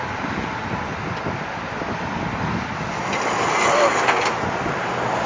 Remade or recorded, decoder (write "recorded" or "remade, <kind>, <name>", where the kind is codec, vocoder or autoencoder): remade, vocoder, BigVGAN v2